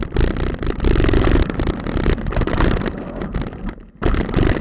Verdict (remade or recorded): recorded